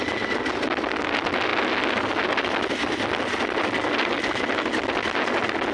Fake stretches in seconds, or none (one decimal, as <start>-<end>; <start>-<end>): none